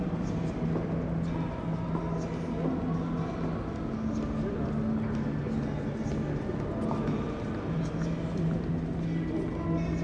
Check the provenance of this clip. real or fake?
real